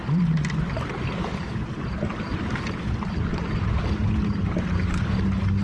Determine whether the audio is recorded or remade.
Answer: recorded